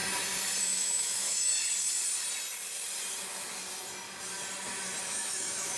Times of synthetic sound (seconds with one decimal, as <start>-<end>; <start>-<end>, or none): 0.6-1.5; 5.0-5.8

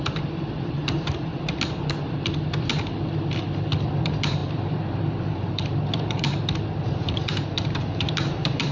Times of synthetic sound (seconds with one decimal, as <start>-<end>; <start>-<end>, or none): 0.0-1.3; 4.0-8.7

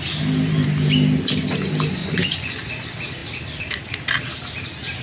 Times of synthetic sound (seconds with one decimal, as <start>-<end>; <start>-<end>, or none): 2.0-2.7

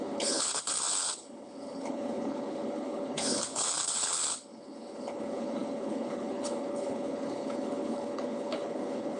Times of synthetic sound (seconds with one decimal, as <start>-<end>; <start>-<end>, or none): 0.0-9.2

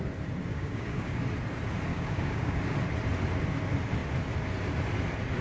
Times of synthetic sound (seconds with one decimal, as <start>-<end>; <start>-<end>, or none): 0.5-1.2; 1.9-2.6

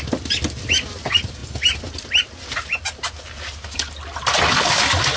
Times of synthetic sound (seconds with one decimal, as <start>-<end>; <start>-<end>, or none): none

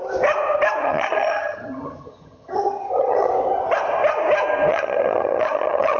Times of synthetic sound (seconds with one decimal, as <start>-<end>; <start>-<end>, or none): 0.8-3.3; 4.7-6.0

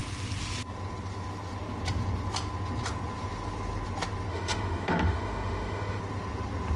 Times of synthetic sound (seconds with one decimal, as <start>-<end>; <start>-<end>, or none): 4.3-6.0